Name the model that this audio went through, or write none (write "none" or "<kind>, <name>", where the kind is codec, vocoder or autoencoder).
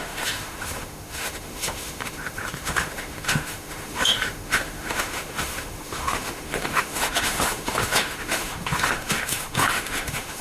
autoencoder, DAC-VAE